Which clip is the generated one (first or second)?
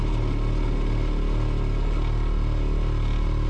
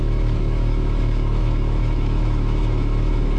second